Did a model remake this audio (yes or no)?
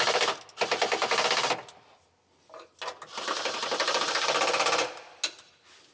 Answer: no